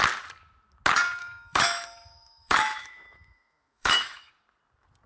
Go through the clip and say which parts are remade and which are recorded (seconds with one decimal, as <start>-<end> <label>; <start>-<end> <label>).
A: 0.0-1.2 recorded; 1.2-4.3 remade; 4.3-5.1 recorded